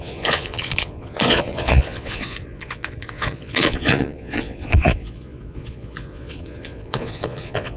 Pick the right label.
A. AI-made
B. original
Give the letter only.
A